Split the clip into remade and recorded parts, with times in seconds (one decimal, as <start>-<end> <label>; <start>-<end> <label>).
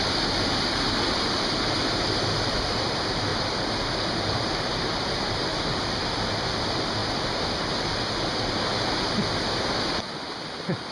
0.0-3.3 recorded; 3.3-6.0 remade; 6.0-10.9 recorded